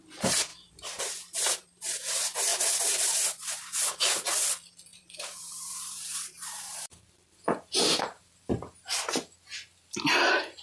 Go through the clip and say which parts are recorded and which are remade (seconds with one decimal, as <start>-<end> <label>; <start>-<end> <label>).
0.0-0.5 recorded; 0.5-2.0 remade; 2.0-4.9 recorded; 4.9-8.5 remade; 8.5-10.6 recorded